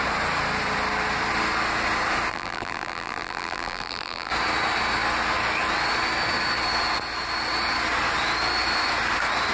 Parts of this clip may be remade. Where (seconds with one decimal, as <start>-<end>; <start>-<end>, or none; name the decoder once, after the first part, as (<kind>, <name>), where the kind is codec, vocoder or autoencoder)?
2.3-4.3 (vocoder, BigVGAN v2)